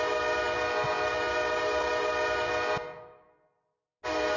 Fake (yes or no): no